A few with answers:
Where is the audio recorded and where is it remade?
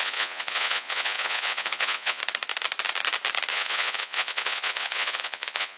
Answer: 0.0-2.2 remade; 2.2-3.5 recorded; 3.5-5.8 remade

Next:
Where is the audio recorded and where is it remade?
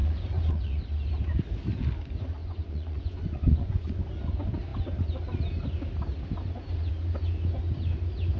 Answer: 0.0-0.8 remade; 0.8-2.4 recorded; 2.4-4.0 remade; 4.0-8.4 recorded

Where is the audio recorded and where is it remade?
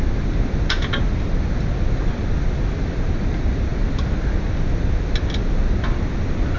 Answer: 0.0-6.6 recorded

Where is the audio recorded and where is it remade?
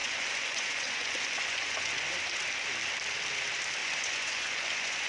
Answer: 0.0-2.2 remade; 2.2-3.8 recorded; 3.8-5.1 remade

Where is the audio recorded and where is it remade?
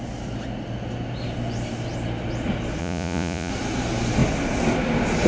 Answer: 0.0-2.8 recorded; 2.8-3.5 remade; 3.5-5.3 recorded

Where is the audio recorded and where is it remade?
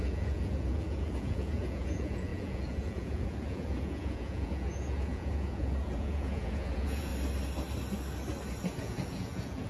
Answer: 0.0-7.1 remade; 7.1-8.8 recorded; 8.8-9.7 remade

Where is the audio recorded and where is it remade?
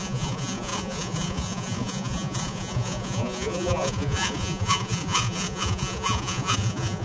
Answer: 0.0-7.0 remade